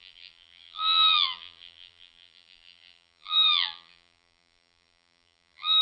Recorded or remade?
remade